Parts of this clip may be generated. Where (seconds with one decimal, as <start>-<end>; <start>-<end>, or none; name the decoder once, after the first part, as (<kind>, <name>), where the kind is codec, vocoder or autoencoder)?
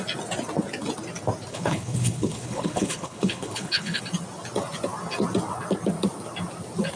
1.5-4.0 (codec, HILCodec)